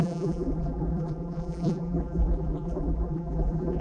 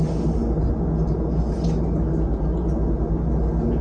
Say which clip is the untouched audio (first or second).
second